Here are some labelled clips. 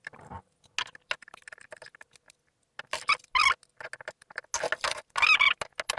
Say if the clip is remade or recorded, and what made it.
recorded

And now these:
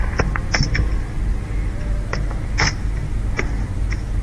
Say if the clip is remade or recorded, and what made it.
recorded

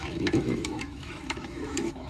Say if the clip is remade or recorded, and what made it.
remade, autoencoder, DAC-VAE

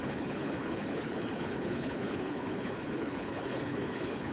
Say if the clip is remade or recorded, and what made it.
remade, codec, HILCodec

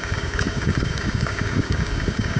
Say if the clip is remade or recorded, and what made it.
remade, codec, DAC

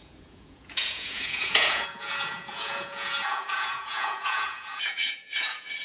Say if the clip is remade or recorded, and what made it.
remade, vocoder, Vocos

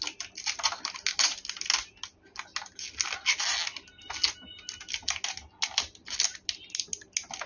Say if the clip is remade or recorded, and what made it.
recorded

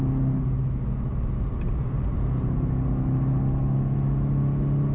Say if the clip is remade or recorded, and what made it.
recorded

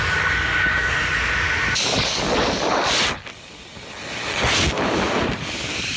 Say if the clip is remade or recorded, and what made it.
recorded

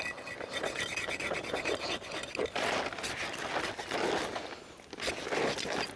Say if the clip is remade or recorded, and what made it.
recorded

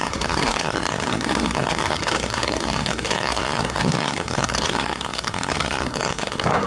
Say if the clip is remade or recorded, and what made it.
remade, codec, SNAC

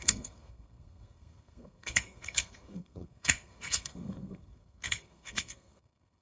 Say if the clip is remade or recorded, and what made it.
remade, codec, SNAC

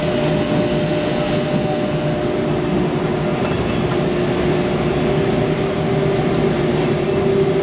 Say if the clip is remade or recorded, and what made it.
recorded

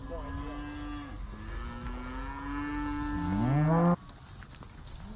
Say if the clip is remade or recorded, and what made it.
recorded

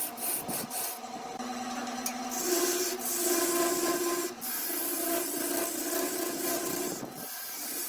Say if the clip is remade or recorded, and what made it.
remade, vocoder, BigVGAN v2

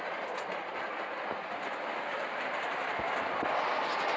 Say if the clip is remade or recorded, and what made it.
recorded